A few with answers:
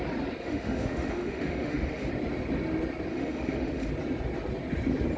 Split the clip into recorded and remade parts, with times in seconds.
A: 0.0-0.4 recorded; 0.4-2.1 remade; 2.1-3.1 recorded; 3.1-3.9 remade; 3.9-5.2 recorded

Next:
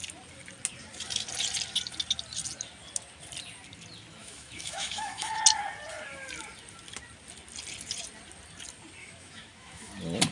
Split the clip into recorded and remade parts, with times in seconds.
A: 0.0-4.2 recorded; 4.2-5.4 remade; 5.4-9.0 recorded; 9.0-9.9 remade; 9.9-10.3 recorded

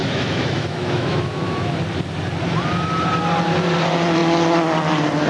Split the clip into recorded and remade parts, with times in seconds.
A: 0.0-1.7 remade; 1.7-5.3 recorded

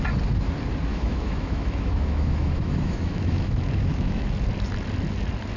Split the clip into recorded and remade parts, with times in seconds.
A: 0.0-0.9 recorded; 0.9-4.3 remade; 4.3-5.6 recorded